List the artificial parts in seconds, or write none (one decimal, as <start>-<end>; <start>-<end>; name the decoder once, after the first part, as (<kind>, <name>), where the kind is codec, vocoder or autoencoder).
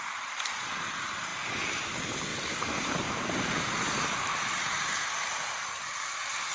0.0-4.3 (vocoder, BigVGAN v2); 5.7-6.5